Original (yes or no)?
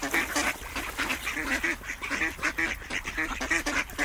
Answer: yes